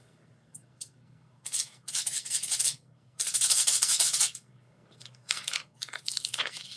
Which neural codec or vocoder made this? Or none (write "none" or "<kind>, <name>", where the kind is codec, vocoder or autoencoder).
codec, SNAC